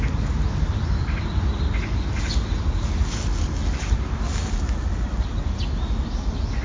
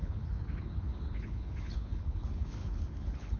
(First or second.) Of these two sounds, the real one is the first